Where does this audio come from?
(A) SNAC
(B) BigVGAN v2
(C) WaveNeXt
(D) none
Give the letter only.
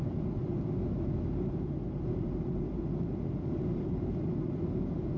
D